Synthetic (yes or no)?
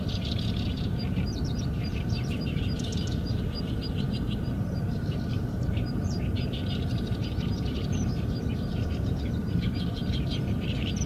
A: yes